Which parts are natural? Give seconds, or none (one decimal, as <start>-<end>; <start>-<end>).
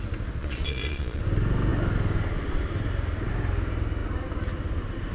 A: 0.0-0.4; 1.2-5.1